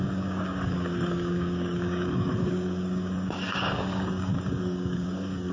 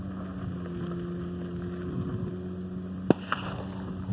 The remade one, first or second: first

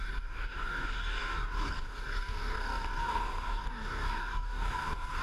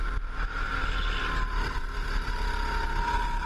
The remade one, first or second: first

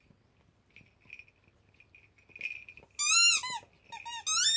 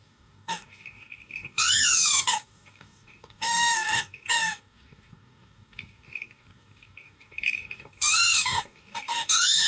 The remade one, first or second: second